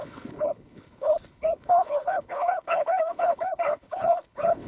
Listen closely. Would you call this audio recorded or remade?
remade